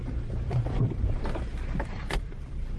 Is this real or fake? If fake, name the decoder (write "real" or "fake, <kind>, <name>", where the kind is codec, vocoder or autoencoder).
fake, vocoder, BigVGAN v2